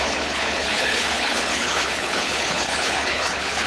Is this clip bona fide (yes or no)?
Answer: no